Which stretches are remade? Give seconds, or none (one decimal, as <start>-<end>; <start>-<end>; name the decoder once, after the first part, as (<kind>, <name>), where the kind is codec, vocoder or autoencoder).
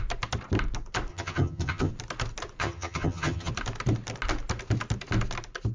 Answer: 1.1-1.9 (vocoder, HiFi-GAN); 2.6-3.5